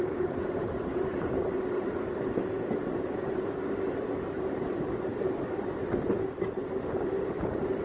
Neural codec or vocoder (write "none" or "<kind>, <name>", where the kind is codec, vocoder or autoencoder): none